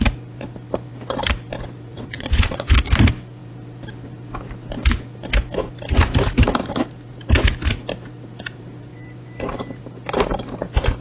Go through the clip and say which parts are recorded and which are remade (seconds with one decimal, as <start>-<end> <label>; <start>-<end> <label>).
0.0-1.9 recorded; 1.9-2.7 remade; 2.7-11.0 recorded